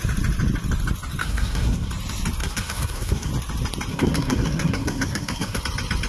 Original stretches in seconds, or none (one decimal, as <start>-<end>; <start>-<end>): 0.0-1.2; 1.9-2.4; 3.3-3.9; 5.6-6.1